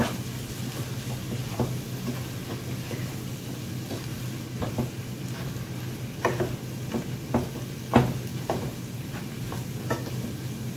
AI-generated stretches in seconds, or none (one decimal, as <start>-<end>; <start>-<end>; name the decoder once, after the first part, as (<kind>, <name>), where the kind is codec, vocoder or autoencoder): 8.3-9.8 (vocoder, BigVGAN v2)